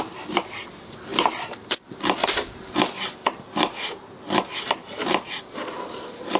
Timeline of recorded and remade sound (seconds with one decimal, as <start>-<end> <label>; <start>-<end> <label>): 0.0-6.4 recorded